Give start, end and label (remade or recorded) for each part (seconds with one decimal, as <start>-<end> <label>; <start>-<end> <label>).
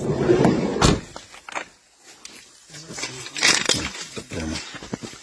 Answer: 0.0-0.7 remade; 0.7-2.4 recorded; 2.4-5.2 remade